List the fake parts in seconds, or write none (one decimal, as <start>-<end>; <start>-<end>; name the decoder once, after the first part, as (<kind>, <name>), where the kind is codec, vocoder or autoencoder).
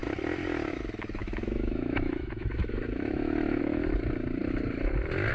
1.2-3.6 (autoencoder, DAC-VAE)